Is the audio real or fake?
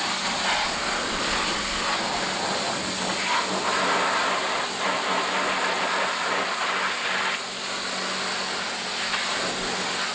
real